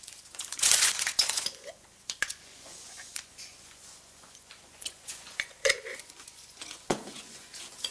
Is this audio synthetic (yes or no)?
yes